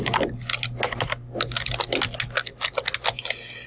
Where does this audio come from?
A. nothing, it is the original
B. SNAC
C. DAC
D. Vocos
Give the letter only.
A